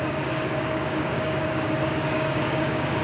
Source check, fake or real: fake